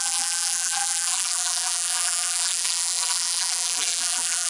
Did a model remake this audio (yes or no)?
yes